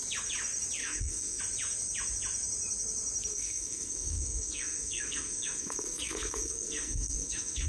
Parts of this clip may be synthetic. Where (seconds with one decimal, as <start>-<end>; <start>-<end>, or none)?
0.8-1.4; 3.3-7.7